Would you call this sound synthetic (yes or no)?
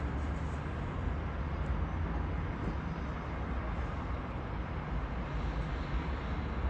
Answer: no